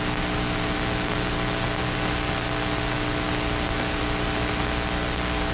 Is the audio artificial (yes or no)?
no